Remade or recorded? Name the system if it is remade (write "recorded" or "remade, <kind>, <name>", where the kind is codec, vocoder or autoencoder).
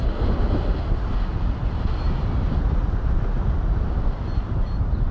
recorded